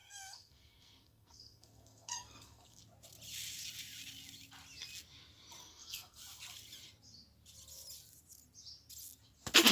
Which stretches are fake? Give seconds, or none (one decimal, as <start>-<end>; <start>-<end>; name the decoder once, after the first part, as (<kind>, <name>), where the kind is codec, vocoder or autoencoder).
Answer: 0.0-2.8 (codec, SNAC); 5.6-6.2